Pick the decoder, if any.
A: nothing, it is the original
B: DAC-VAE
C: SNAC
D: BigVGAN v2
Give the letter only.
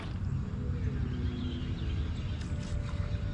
A